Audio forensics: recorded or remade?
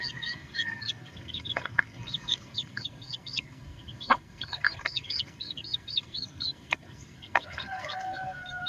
remade